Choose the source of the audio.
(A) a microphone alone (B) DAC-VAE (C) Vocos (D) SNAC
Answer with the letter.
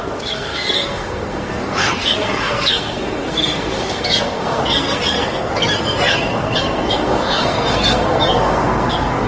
D